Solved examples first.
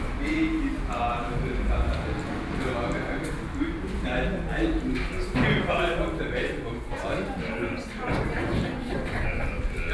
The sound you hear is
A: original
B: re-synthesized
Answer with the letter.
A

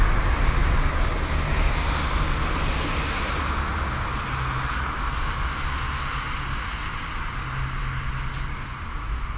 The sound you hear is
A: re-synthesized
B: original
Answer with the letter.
B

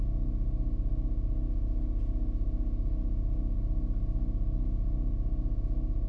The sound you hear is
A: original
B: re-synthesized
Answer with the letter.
A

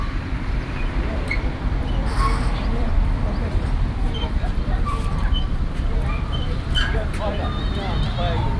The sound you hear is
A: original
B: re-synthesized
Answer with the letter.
B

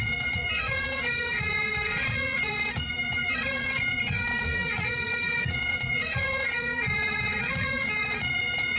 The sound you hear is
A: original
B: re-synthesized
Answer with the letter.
B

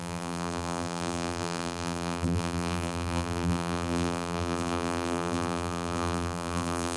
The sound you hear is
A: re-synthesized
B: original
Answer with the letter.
A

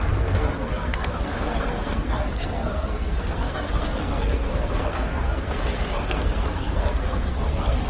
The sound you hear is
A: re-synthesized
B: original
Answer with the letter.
A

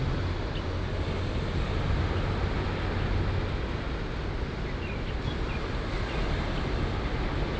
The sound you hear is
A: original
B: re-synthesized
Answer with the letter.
A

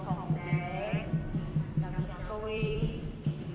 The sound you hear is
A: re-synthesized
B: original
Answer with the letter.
A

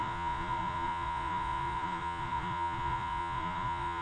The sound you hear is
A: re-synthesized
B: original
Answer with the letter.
A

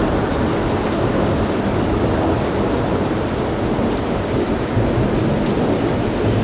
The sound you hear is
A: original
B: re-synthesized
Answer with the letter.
A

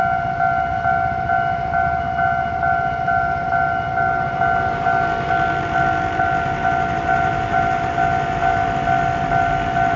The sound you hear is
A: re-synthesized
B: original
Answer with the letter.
B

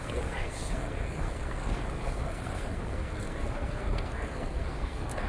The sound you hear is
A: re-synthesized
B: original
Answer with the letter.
A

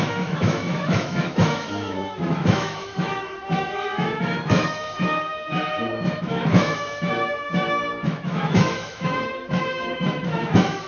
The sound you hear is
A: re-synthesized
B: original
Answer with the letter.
A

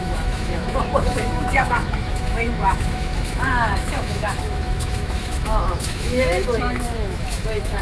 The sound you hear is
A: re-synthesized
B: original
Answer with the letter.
A